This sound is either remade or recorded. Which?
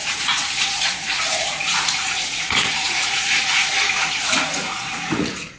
remade